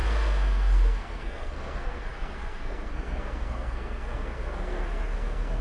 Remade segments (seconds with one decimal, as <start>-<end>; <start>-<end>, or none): 0.0-5.6